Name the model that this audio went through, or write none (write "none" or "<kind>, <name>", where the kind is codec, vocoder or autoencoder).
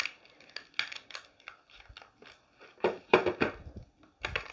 none